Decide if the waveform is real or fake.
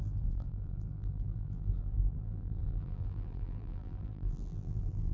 fake